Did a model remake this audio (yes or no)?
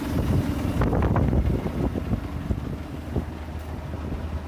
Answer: no